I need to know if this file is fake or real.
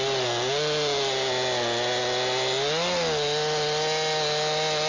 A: real